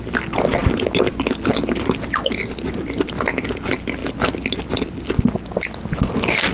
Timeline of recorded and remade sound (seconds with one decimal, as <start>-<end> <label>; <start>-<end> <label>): 0.0-6.5 recorded